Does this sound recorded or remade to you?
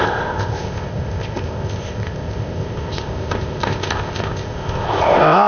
remade